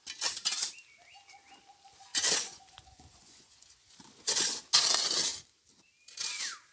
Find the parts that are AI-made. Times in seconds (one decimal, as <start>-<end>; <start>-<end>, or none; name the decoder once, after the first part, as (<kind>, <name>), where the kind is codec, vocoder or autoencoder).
2.1-4.6 (vocoder, Vocos)